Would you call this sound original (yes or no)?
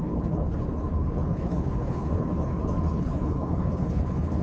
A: no